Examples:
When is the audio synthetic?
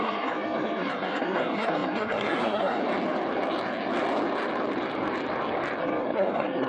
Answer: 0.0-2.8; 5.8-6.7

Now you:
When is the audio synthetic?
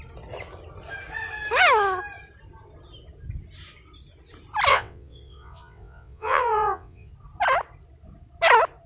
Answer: 4.7-7.1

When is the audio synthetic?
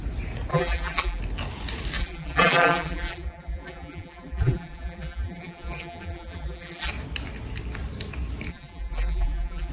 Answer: 0.5-1.2; 2.0-6.9; 8.5-9.7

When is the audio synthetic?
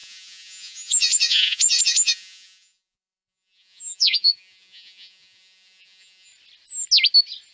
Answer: 0.0-6.3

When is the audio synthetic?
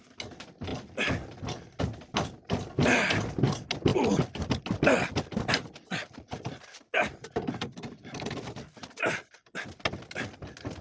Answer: none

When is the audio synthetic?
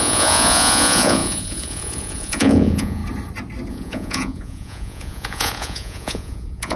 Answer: 0.0-3.0; 3.7-6.8